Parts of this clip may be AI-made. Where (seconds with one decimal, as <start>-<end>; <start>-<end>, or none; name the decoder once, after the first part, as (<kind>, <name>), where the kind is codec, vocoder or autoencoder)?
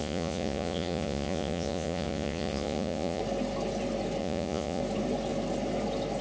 0.0-3.2 (vocoder, Vocos); 4.2-4.8